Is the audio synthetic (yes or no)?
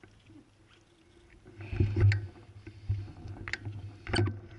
no